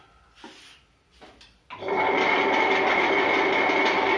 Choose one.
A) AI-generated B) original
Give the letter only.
B